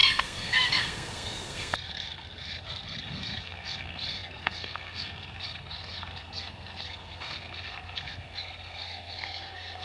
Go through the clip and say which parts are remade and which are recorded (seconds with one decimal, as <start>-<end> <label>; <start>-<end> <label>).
0.0-9.8 remade